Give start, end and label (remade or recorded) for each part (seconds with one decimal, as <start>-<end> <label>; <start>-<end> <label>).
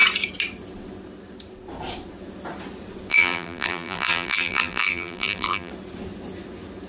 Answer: 0.0-3.1 recorded; 3.1-5.7 remade; 5.7-6.9 recorded